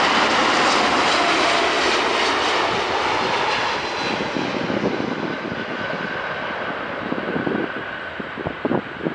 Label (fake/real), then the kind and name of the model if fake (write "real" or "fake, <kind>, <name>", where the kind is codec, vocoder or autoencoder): real